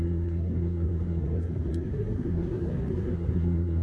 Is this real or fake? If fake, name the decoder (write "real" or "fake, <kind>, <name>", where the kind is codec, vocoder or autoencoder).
fake, codec, SNAC